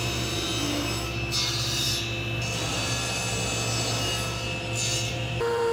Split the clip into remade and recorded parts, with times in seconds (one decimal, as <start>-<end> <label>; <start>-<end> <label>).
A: 0.0-0.5 remade; 0.5-2.7 recorded; 2.7-3.2 remade; 3.2-5.1 recorded; 5.1-5.7 remade